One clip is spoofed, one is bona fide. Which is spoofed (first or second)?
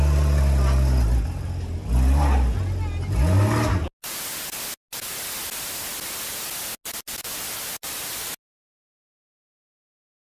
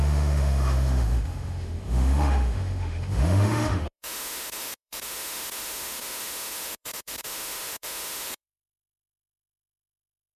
second